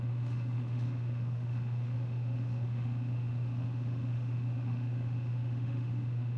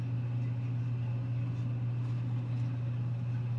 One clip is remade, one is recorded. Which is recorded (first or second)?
second